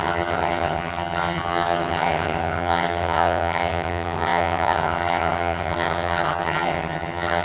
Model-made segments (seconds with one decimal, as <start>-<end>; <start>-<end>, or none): 0.0-7.4